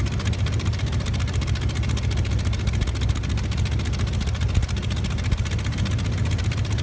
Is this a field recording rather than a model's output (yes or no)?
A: yes